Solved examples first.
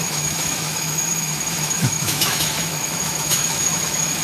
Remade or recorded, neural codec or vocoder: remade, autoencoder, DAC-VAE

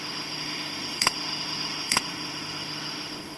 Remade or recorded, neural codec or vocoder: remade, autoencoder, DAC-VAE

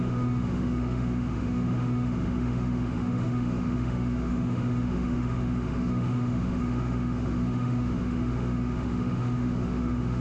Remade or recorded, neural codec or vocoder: remade, autoencoder, DAC-VAE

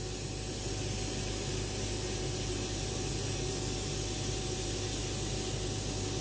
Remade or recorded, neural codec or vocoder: recorded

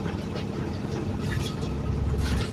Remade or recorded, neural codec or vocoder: recorded